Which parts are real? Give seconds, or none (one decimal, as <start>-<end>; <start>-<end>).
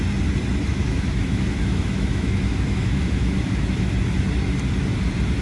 0.0-0.7; 3.9-5.4